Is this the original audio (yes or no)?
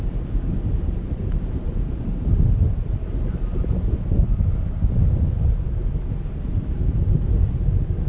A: yes